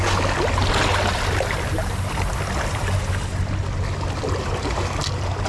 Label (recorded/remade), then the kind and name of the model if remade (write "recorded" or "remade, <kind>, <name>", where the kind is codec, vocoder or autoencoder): recorded